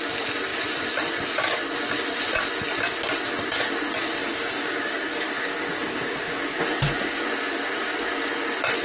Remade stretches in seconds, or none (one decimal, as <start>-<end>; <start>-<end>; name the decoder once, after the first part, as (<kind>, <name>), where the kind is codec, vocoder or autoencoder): 4.2-6.6 (codec, DAC)